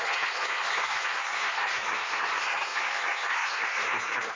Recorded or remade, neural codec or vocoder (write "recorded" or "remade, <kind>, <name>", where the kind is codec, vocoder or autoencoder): remade, codec, SNAC